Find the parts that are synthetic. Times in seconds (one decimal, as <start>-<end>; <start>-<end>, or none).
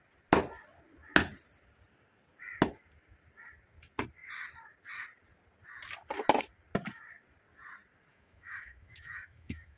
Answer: 8.1-9.8